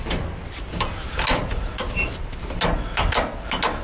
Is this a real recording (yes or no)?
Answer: yes